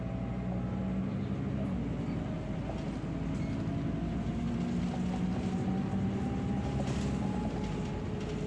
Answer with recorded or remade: recorded